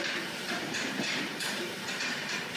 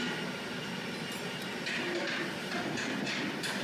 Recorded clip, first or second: second